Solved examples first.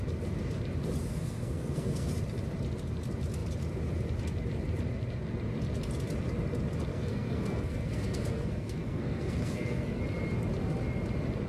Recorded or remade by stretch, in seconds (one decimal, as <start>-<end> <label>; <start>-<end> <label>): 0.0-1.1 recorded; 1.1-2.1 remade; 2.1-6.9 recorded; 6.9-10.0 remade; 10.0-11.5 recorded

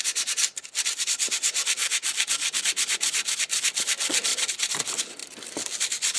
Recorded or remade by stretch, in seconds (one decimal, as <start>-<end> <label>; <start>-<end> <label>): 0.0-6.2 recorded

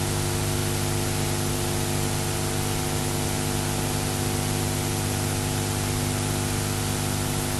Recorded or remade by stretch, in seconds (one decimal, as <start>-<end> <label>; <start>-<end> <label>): 0.0-7.6 recorded

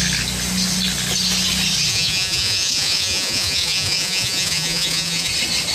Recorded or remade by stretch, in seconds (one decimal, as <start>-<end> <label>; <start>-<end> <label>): 0.0-1.9 recorded; 1.9-5.3 remade; 5.3-5.7 recorded